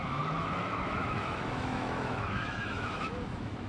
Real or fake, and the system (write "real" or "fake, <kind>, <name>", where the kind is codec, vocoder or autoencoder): fake, autoencoder, DAC-VAE